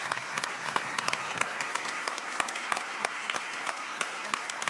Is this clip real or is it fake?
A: fake